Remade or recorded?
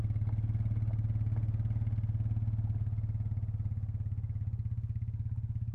recorded